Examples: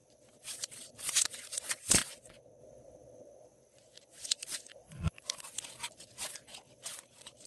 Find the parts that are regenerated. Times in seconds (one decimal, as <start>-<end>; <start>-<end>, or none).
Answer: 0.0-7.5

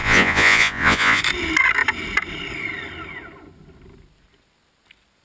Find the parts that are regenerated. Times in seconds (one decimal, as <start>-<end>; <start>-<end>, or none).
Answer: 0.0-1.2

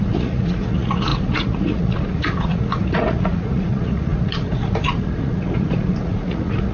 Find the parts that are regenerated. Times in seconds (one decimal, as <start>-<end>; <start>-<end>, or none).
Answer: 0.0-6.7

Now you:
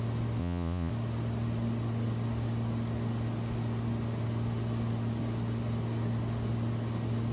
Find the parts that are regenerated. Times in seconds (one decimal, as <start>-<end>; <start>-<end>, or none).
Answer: 0.4-0.9

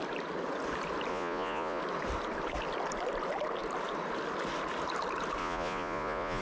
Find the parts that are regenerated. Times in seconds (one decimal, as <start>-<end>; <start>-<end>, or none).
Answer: 1.1-1.8; 5.4-6.4